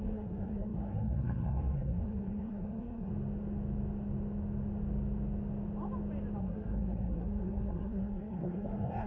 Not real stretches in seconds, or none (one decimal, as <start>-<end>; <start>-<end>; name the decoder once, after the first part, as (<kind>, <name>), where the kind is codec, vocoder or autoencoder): 0.0-3.1 (codec, SNAC); 6.4-9.1

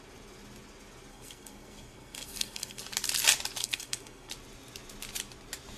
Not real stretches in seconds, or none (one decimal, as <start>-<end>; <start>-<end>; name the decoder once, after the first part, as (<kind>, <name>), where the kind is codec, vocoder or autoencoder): 1.1-2.8 (codec, SNAC); 3.6-4.3

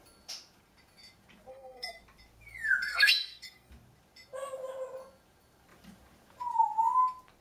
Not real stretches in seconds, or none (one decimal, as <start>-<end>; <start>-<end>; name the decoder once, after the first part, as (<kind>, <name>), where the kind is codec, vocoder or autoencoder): 1.5-2.0 (codec, SNAC); 2.9-3.7

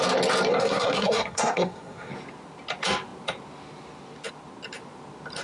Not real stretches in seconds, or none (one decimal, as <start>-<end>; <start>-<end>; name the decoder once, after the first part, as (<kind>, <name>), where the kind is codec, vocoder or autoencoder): 0.5-2.1 (codec, SNAC)

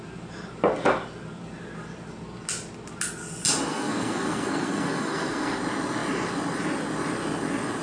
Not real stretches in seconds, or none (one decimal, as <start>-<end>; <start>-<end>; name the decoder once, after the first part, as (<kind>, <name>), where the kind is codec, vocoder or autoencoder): 3.7-5.6 (codec, SNAC)

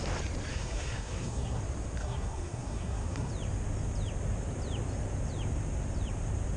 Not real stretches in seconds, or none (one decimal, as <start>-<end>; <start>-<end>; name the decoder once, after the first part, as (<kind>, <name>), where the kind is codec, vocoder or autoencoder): 0.5-1.6 (codec, SNAC); 2.0-3.3

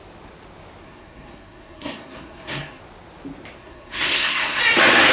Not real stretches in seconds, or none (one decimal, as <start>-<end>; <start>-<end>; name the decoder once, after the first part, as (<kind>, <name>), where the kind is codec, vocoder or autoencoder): 0.8-2.8 (codec, SNAC); 3.6-4.6